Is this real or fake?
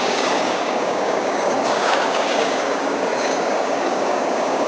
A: fake